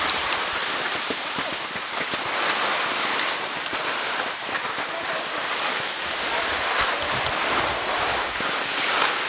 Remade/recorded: remade